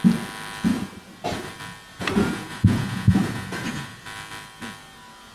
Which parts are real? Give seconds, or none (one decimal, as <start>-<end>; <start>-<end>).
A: 0.0-0.7; 1.5-1.9; 4.0-5.3